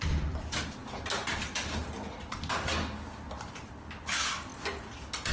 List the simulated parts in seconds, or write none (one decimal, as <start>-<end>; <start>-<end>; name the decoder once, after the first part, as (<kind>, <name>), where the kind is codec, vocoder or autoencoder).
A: none